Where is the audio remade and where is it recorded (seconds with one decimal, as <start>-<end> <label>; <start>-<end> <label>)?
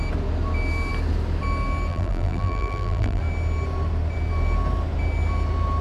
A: 0.0-1.9 recorded; 1.9-3.2 remade; 3.2-5.8 recorded